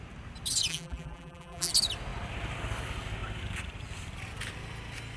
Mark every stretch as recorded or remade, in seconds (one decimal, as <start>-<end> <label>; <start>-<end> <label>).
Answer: 0.0-0.7 recorded; 0.7-1.7 remade; 1.7-5.2 recorded